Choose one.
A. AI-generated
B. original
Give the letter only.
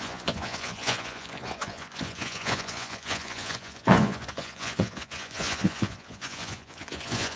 A